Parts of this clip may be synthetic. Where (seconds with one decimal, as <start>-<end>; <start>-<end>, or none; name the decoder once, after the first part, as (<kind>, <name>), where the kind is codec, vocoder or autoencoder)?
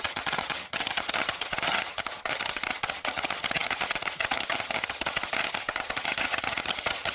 0.0-7.1 (vocoder, HiFi-GAN)